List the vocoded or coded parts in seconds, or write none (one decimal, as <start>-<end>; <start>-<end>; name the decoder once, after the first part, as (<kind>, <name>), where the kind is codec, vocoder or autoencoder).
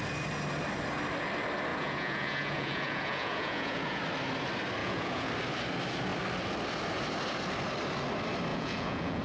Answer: 1.7-4.0 (vocoder, Vocos); 4.8-5.3; 8.5-9.2